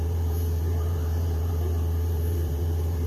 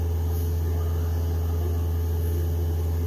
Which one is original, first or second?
second